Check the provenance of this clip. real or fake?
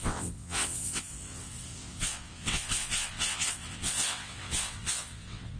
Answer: fake